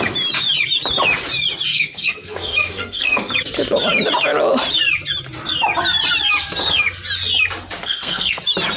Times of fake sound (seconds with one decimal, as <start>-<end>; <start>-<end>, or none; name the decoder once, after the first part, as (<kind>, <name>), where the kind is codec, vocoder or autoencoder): 1.7-3.3 (codec, SNAC); 7.8-8.4